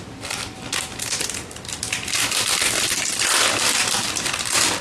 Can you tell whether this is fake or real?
real